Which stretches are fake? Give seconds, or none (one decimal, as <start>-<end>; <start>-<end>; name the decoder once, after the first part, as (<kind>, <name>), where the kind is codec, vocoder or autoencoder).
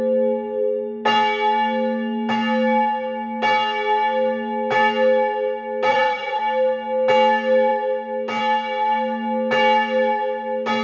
5.9-6.4 (vocoder, Vocos)